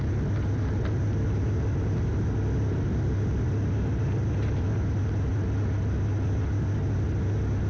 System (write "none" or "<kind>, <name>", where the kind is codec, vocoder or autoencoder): none